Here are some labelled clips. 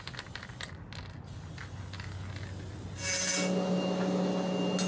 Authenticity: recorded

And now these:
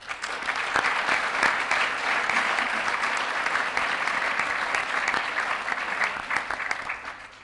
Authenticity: recorded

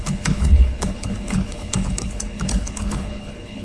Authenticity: remade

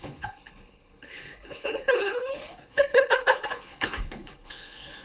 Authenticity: remade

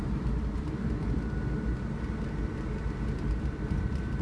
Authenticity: recorded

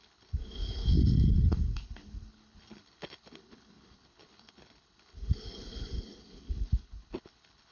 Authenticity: remade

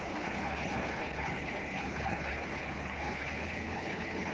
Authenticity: remade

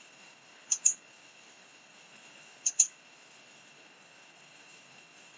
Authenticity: remade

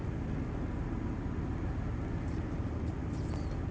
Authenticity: recorded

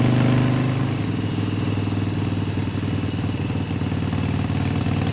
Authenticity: recorded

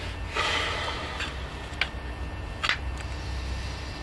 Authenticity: recorded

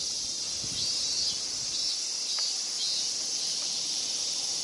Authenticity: recorded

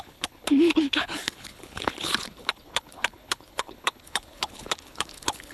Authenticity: remade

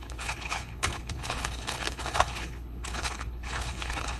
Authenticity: remade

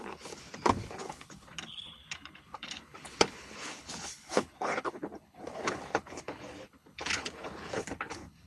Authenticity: remade